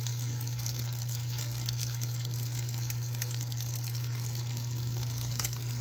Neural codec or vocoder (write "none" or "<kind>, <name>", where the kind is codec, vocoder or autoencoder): codec, SNAC